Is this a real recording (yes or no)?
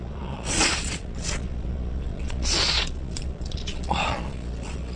no